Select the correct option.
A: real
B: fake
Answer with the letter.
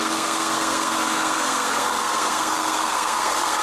B